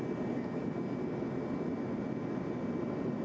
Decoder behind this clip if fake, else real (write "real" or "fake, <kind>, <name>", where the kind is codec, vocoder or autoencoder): real